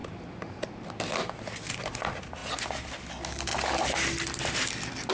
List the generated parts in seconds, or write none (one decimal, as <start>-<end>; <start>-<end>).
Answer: none